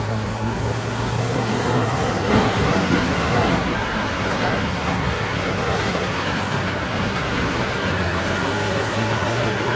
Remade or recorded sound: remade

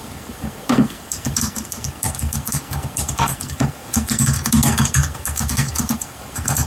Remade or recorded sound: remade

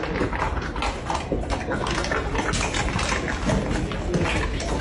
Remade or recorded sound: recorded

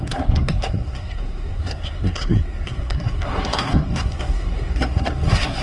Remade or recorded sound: remade